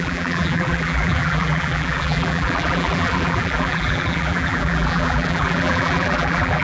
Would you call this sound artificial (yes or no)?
yes